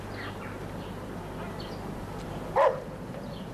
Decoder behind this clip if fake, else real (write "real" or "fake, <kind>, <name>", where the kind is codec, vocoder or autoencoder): real